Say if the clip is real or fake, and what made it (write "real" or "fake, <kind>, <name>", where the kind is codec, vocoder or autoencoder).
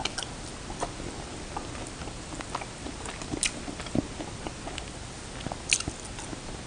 real